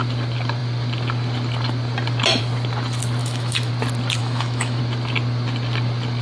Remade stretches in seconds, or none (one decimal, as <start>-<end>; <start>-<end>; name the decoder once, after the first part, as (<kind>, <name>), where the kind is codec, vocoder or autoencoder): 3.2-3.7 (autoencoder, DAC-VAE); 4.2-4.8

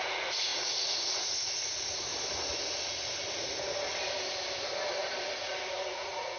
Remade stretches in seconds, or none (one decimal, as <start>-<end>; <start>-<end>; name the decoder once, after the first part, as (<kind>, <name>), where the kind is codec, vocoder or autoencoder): 0.0-2.1 (vocoder, Vocos); 5.9-6.4

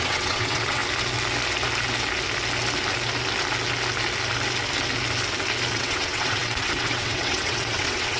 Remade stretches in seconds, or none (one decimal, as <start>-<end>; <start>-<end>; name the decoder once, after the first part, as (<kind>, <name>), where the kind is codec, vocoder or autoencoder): 0.0-0.8 (vocoder, WaveNeXt); 5.7-8.2